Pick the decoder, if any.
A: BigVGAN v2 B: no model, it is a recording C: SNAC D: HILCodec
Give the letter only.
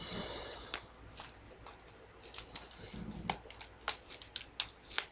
B